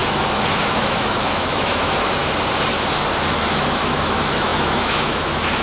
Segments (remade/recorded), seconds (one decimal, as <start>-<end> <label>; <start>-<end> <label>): 0.0-2.2 remade; 2.2-3.4 recorded; 3.4-5.6 remade